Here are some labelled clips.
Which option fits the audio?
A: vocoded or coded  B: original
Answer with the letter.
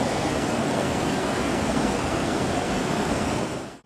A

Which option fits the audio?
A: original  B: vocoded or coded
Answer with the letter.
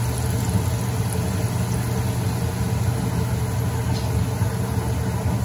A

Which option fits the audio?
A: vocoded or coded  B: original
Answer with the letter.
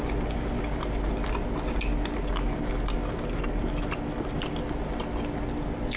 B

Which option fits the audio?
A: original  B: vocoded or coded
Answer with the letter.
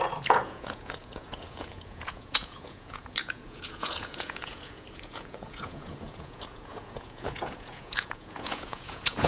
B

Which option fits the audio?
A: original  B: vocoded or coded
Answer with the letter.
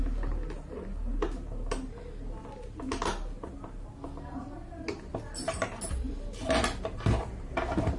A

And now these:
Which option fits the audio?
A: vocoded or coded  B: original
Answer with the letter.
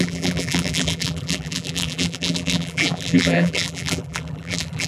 A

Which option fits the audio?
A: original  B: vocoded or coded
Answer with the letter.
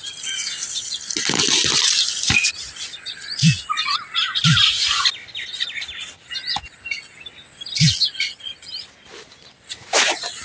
A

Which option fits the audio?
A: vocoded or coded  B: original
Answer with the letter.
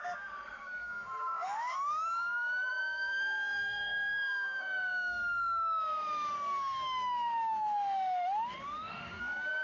A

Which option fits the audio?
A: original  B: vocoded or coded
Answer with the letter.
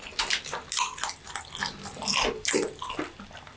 A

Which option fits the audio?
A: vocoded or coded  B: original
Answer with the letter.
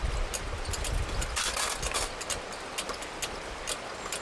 B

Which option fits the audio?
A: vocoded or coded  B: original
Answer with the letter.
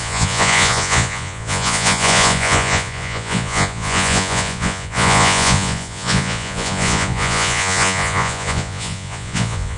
A